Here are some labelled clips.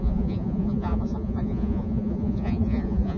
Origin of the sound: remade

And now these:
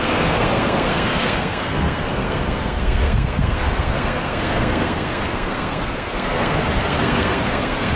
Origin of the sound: remade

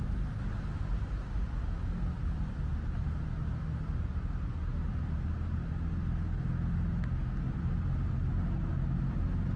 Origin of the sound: recorded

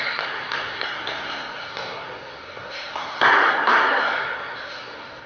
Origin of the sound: remade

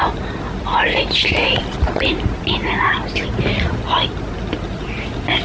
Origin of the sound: recorded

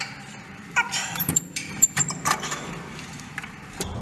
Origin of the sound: remade